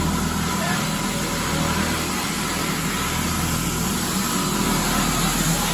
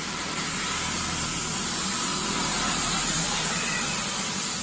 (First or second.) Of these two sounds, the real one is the first